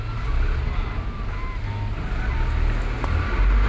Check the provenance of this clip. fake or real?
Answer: real